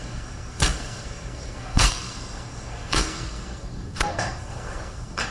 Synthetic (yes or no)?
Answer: yes